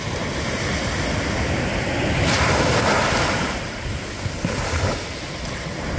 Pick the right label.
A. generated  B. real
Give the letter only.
B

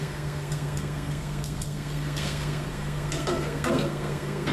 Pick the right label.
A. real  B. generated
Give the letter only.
B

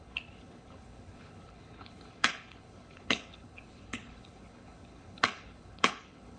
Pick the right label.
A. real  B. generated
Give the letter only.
B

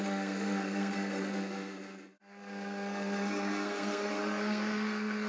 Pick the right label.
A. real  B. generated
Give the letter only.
B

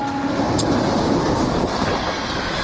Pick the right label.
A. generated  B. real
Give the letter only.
B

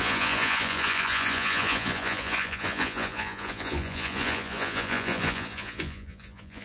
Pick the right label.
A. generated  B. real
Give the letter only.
A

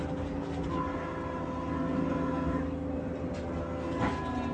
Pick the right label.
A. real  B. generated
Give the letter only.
A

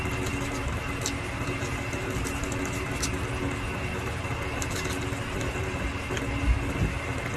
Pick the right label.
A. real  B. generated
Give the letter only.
A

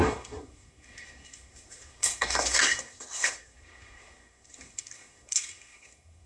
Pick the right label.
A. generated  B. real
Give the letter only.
A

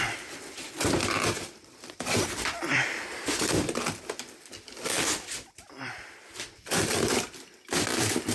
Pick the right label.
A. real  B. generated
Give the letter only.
B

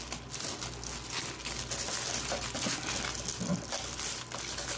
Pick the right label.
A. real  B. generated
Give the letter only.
A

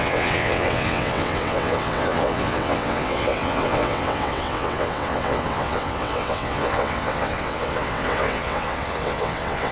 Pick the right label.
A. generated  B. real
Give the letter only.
A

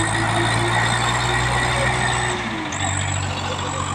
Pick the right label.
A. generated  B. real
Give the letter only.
B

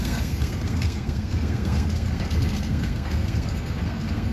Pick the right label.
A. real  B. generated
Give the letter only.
B